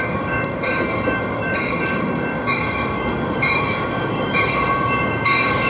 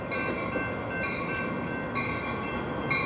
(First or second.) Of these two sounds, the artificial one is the first